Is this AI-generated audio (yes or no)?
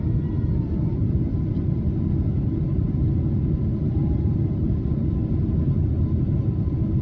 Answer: no